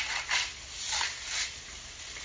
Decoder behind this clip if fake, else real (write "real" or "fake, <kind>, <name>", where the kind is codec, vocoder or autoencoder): real